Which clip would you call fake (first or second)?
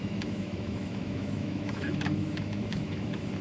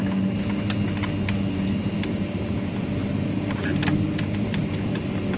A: first